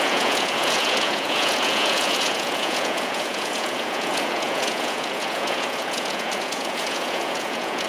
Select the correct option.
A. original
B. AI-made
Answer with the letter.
B